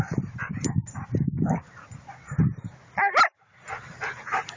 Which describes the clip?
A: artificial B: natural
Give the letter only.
B